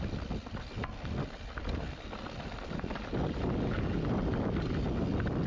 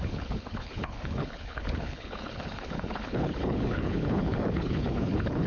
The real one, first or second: first